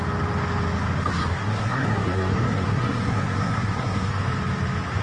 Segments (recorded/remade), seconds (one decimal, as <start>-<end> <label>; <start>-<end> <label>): 0.0-1.1 recorded; 1.1-4.1 remade; 4.1-5.0 recorded